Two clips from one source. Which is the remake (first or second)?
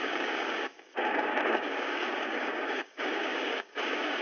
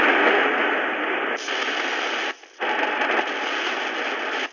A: first